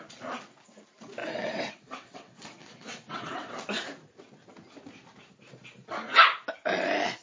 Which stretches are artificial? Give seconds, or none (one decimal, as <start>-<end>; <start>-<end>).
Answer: 1.2-3.5

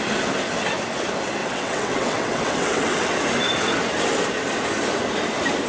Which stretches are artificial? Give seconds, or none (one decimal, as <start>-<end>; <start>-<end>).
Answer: 1.4-3.2

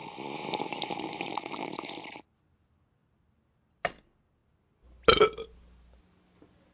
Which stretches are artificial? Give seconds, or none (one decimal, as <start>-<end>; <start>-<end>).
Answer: none

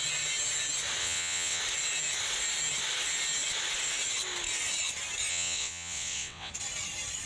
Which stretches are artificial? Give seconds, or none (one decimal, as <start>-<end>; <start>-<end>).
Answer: 1.0-1.6; 5.3-6.5

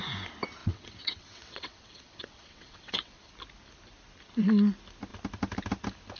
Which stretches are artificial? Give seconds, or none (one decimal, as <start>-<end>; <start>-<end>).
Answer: 0.6-3.3

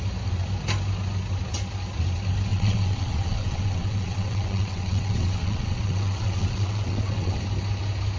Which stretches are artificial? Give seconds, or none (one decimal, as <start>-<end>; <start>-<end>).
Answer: 2.5-7.4

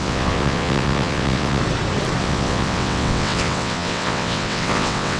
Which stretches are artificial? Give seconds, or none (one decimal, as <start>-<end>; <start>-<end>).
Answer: 0.0-1.6; 2.2-5.2